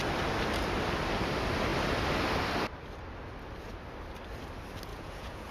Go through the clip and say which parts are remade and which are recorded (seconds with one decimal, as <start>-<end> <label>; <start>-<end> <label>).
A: 0.0-4.9 recorded; 4.9-5.5 remade